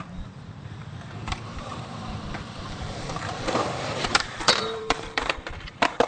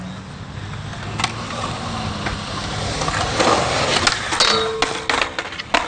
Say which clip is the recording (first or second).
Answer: second